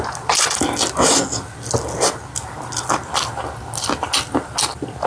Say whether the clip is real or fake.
real